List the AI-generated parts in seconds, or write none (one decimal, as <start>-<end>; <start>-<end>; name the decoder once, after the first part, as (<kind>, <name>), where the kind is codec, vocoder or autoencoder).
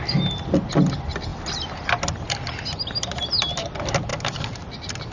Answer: none